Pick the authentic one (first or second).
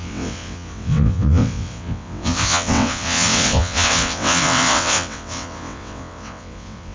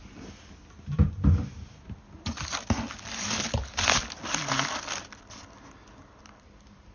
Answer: second